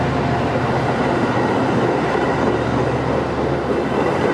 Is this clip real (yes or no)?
yes